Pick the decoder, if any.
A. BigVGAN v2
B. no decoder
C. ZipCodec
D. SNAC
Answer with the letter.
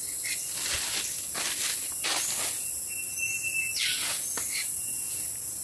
B